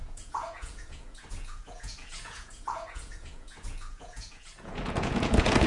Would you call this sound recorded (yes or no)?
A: no